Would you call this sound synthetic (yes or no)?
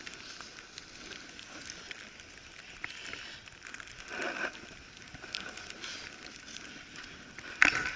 no